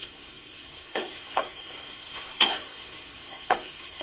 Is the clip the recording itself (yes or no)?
no